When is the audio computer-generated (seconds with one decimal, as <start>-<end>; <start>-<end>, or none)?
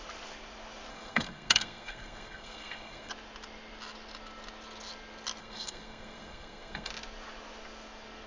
0.9-3.1; 5.4-6.9